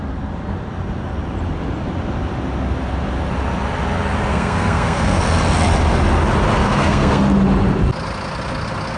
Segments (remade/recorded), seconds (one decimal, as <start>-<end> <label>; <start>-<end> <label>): 0.0-4.3 recorded; 4.3-5.2 remade; 5.2-6.6 recorded; 6.6-7.2 remade; 7.2-9.0 recorded